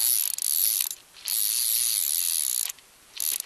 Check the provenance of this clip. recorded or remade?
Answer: recorded